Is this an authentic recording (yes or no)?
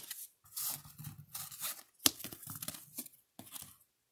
yes